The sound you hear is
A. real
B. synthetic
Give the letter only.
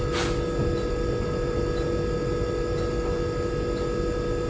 A